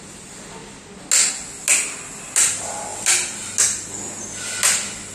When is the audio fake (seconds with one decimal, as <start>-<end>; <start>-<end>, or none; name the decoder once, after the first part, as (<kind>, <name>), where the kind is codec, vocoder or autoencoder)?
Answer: none